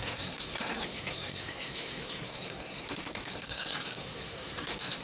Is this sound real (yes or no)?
no